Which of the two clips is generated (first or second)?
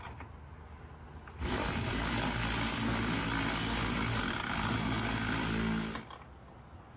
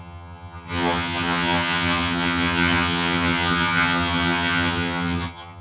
second